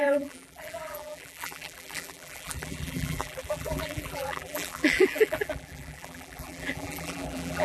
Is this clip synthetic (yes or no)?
yes